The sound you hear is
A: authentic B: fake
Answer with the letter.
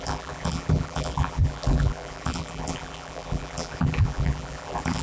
B